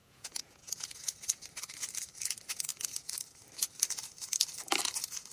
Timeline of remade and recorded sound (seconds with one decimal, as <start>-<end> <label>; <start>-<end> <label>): 0.0-1.1 remade; 1.1-5.3 recorded